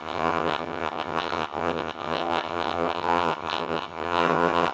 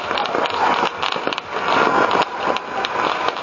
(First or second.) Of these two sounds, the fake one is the first